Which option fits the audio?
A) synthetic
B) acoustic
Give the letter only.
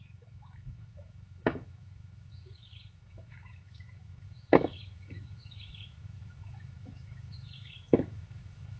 A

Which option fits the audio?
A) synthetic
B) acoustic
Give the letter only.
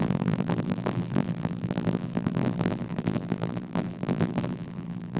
A